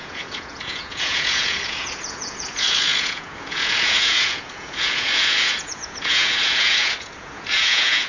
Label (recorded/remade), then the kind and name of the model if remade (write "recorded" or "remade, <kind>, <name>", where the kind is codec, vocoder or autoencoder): remade, vocoder, Vocos